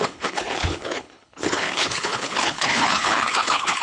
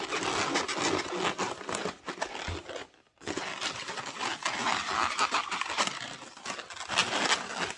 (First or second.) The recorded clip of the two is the second